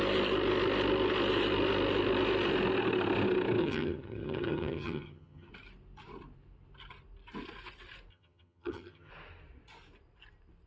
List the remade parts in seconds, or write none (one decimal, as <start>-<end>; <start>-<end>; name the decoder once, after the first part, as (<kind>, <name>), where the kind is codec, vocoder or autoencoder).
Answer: 3.6-5.5 (vocoder, HiFi-GAN); 8.1-9.1